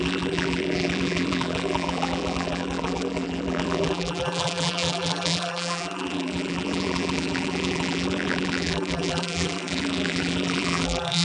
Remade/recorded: remade